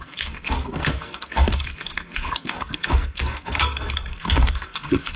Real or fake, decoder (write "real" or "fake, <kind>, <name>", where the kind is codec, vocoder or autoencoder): fake, codec, SNAC